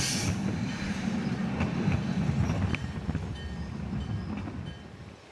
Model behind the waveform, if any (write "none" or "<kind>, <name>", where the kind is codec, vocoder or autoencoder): none